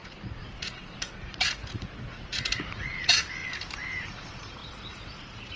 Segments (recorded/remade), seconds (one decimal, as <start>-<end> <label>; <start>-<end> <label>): 0.0-3.4 remade; 3.4-4.1 recorded; 4.1-5.6 remade